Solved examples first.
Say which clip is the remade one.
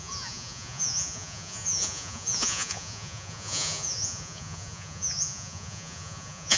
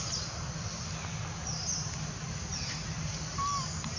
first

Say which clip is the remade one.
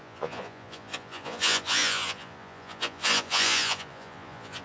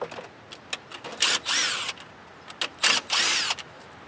first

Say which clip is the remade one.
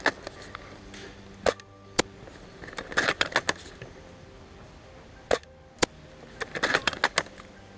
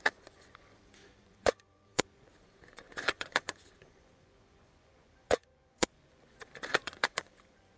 second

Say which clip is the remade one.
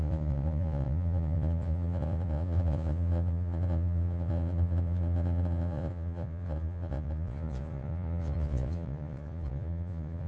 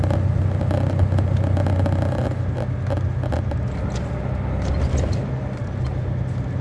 first